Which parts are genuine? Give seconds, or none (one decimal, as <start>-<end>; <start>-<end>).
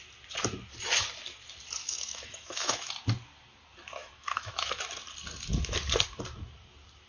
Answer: 0.0-1.8; 2.9-4.0; 4.8-7.1